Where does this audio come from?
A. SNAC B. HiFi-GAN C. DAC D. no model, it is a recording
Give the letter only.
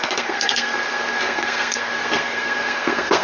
A